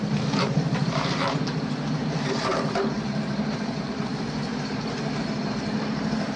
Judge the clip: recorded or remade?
remade